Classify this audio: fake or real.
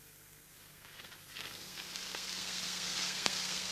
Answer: fake